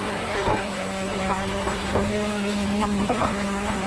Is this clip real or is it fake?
fake